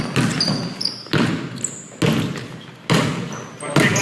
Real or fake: real